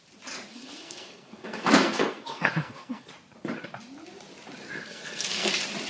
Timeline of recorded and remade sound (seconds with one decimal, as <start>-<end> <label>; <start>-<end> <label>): 0.0-0.5 recorded; 0.5-3.1 remade; 3.1-4.9 recorded; 4.9-5.5 remade; 5.5-5.9 recorded